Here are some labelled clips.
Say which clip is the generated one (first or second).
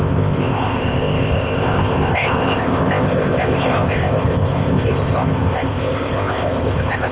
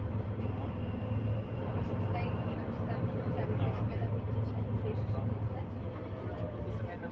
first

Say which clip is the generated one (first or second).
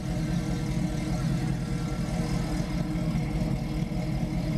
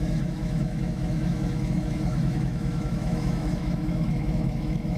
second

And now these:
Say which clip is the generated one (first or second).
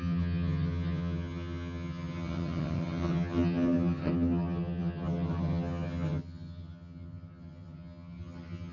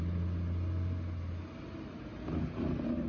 first